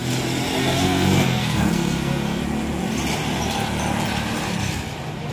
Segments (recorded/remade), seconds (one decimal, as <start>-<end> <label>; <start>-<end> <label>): 0.0-0.6 recorded; 0.6-2.4 remade; 2.4-5.3 recorded